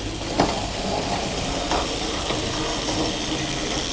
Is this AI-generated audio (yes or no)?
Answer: no